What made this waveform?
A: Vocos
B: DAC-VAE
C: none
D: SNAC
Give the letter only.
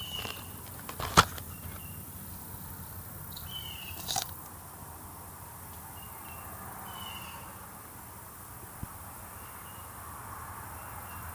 C